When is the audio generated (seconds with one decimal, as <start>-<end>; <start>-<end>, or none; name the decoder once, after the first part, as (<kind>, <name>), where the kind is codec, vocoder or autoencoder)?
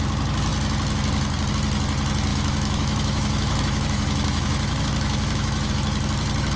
2.3-5.7 (autoencoder, DAC-VAE)